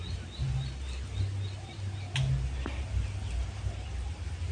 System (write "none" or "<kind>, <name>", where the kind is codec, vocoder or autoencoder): none